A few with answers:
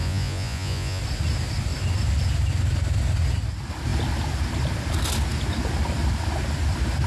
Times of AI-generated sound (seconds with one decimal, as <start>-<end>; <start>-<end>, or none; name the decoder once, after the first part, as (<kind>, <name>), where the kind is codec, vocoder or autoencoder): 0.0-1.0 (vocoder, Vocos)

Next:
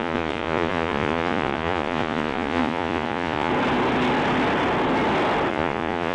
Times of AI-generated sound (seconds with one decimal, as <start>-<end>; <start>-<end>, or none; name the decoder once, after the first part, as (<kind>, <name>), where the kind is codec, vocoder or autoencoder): 0.0-3.5 (vocoder, Vocos); 5.5-6.1

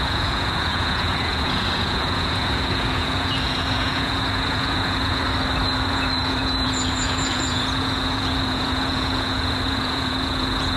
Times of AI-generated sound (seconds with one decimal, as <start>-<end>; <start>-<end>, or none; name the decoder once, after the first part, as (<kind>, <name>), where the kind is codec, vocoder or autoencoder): 0.0-5.2 (vocoder, Vocos); 5.9-10.8

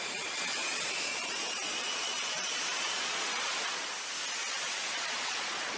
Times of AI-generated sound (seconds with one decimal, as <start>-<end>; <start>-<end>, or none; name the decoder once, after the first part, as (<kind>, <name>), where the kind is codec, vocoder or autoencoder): 0.4-3.9 (vocoder, Vocos); 4.4-5.8